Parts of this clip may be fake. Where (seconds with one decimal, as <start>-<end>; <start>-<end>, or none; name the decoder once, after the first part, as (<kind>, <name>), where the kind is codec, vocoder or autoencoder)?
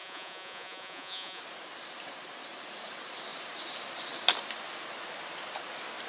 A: 0.0-1.4 (vocoder, Vocos)